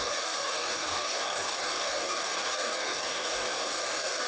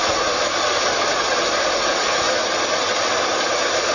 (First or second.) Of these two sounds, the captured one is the second